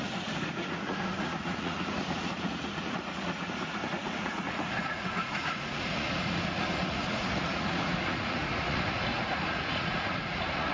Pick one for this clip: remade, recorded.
remade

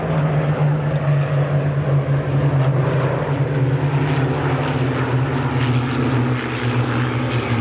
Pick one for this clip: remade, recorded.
recorded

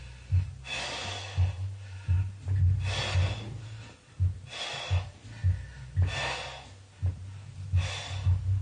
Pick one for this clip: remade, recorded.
recorded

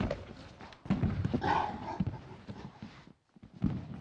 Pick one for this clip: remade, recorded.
recorded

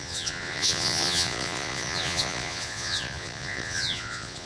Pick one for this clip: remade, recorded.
remade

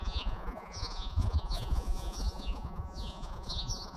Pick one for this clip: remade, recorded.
remade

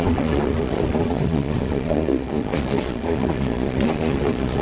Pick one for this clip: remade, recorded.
remade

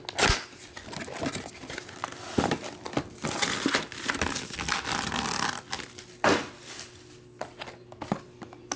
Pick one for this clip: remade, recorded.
recorded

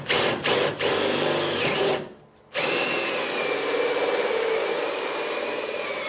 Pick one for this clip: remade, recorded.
recorded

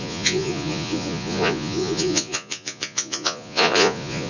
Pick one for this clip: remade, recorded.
remade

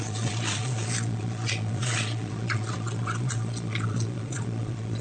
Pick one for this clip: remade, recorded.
remade